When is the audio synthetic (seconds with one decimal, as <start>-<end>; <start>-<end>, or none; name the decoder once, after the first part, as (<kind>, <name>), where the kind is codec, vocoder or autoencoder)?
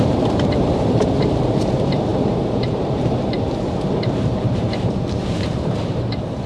0.0-6.5 (vocoder, BigVGAN v2)